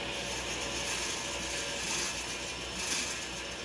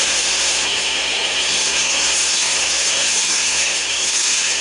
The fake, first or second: second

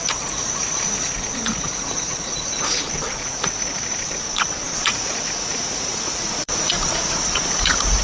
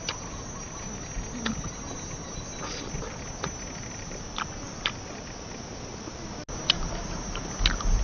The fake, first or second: first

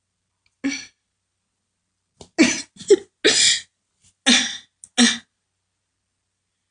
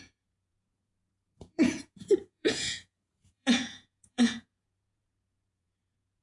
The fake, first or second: second